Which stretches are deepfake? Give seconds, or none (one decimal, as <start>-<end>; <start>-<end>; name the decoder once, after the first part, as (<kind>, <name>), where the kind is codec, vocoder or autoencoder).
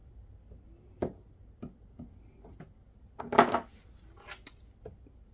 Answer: none